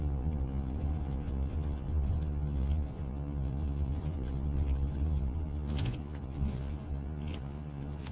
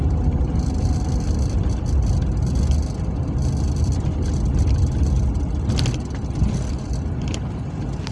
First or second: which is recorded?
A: second